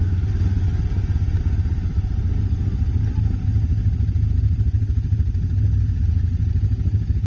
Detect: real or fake real